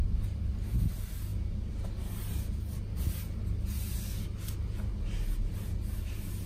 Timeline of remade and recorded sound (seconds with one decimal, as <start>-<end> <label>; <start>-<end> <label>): 0.0-6.5 recorded